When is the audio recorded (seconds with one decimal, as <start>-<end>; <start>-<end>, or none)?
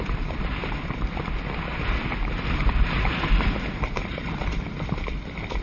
0.0-5.6